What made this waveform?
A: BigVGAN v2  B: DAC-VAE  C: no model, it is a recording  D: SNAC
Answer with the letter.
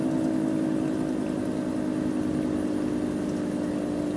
C